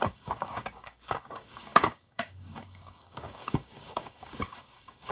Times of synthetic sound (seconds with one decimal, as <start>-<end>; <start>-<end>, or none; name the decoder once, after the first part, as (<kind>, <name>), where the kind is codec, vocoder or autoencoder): 0.0-5.1 (codec, DAC)